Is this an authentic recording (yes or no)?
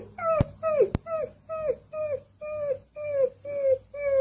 yes